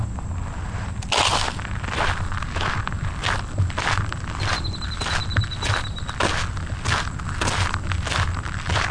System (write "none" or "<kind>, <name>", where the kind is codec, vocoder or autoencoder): none